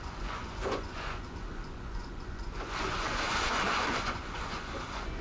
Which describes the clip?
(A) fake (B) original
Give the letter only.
A